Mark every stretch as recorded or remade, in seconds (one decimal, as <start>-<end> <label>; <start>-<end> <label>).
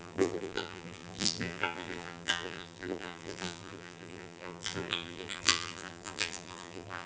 0.0-7.1 remade